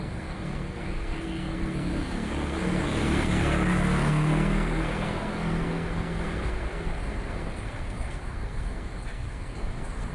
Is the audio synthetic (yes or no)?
yes